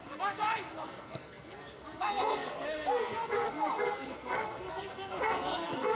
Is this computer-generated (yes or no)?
yes